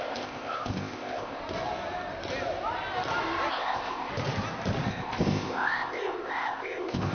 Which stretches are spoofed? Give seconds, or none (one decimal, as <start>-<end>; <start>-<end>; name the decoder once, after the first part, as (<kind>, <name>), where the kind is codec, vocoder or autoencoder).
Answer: 0.0-1.4 (codec, ZipCodec); 3.5-4.1; 4.9-7.1